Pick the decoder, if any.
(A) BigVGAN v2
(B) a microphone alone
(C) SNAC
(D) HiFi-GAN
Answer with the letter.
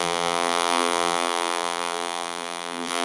A